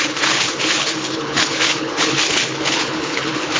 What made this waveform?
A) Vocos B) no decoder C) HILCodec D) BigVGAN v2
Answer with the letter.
C